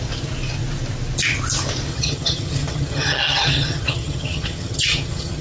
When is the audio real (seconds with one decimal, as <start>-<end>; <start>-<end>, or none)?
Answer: 0.0-1.9